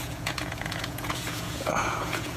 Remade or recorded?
remade